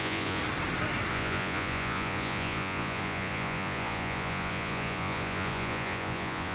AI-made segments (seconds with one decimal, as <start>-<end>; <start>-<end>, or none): 0.0-0.4; 1.1-6.5